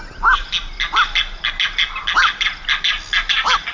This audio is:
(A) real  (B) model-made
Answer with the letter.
A